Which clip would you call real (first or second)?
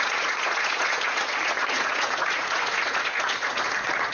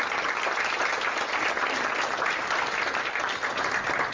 second